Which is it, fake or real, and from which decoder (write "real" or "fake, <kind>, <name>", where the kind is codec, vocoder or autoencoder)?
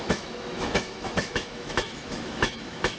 fake, autoencoder, DAC-VAE